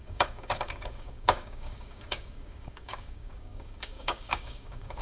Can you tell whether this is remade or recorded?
remade